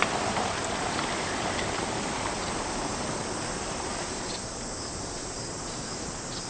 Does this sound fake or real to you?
fake